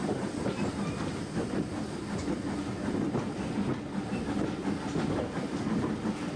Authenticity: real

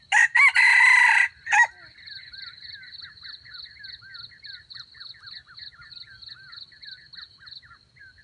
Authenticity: real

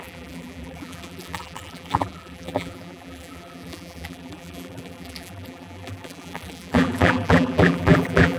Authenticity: fake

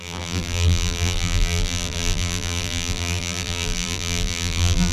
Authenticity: fake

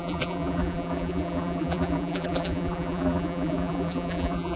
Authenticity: fake